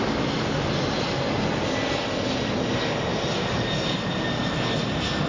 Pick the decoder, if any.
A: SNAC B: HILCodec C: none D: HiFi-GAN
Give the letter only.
C